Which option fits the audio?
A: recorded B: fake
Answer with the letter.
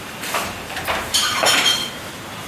B